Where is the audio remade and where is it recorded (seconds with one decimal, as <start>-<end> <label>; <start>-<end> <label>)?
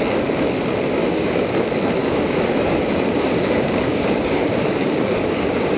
0.0-1.0 recorded; 1.0-1.6 remade; 1.6-2.0 recorded; 2.0-5.8 remade